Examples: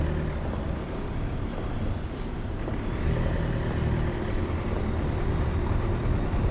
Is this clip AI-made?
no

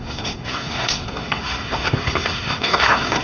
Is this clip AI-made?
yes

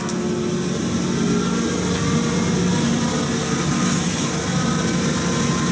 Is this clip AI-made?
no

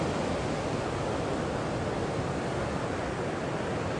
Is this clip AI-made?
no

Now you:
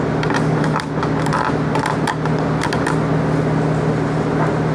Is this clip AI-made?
no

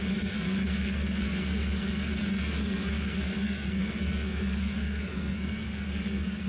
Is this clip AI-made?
yes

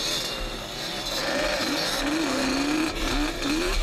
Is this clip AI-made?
no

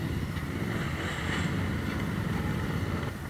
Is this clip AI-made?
no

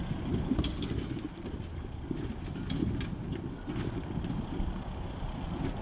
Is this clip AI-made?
no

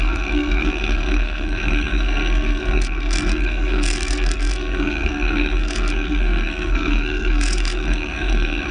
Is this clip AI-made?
yes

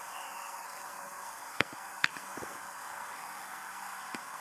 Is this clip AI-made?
yes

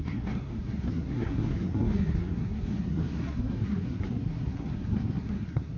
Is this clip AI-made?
yes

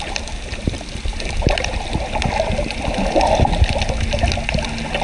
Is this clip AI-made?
no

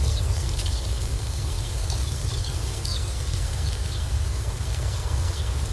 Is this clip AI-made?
yes